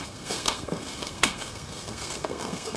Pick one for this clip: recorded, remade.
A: remade